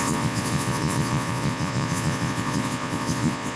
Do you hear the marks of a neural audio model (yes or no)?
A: yes